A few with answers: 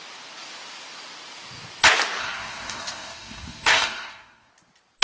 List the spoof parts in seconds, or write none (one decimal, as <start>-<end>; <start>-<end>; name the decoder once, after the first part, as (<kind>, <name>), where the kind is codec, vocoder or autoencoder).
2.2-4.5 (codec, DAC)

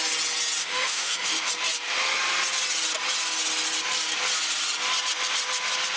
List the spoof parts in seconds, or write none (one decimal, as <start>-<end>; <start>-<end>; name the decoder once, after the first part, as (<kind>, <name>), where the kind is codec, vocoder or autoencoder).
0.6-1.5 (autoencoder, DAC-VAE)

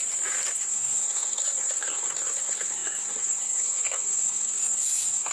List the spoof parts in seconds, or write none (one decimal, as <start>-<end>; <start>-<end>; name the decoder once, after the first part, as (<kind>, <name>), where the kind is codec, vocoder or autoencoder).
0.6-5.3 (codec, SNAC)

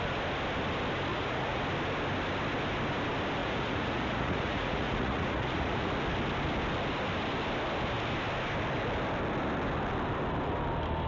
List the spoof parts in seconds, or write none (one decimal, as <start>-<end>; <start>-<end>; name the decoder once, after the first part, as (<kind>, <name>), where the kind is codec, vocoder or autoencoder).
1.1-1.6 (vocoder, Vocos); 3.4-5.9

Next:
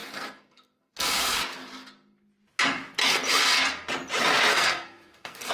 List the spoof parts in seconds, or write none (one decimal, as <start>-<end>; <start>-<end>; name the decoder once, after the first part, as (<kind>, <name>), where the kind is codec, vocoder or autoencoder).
0.0-1.4 (codec, SNAC); 4.5-5.5

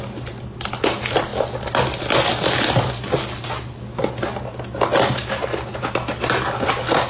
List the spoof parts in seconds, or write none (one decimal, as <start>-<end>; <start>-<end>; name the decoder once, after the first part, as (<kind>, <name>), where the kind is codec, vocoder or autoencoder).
none

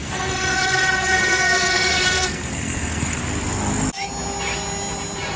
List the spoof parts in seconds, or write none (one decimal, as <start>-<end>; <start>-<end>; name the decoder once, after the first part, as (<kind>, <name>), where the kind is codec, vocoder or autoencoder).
0.0-3.2 (codec, SNAC)

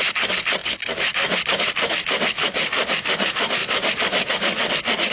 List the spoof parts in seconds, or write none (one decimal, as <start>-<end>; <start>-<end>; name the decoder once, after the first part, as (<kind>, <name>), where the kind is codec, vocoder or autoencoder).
none